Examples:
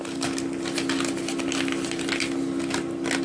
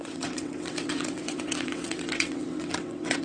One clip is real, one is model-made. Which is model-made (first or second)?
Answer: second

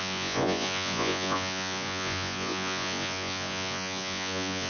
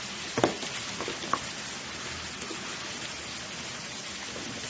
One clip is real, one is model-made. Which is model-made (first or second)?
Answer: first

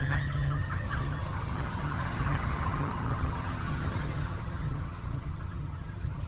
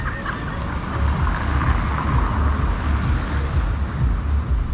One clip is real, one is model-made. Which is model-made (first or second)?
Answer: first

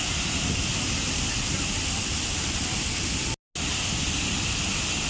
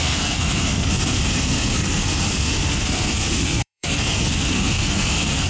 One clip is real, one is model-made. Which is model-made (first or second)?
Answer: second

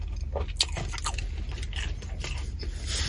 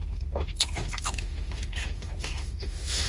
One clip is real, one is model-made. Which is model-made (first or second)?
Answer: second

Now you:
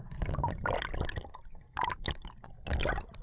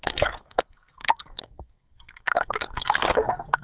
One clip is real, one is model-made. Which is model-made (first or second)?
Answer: second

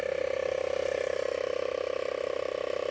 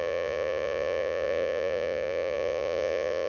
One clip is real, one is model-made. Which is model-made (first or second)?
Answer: second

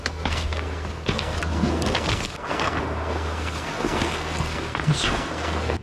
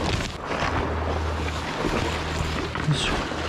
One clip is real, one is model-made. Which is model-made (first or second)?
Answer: first